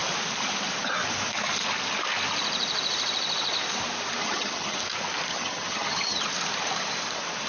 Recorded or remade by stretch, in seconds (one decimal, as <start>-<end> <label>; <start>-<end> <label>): 0.0-4.2 recorded; 4.2-4.8 remade; 4.8-5.3 recorded; 5.3-6.2 remade; 6.2-7.5 recorded